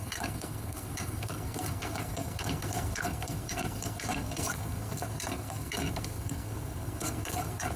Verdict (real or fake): fake